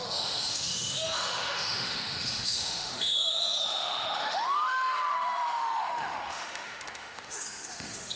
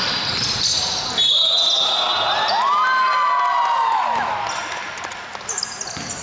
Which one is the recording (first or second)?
second